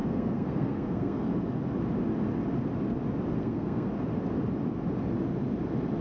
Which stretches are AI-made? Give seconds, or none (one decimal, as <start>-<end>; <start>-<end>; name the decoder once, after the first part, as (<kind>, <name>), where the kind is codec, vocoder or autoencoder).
0.0-1.3 (codec, SNAC); 3.4-3.9